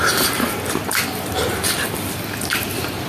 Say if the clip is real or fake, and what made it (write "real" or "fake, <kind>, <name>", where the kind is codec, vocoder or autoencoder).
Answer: fake, vocoder, BigVGAN v2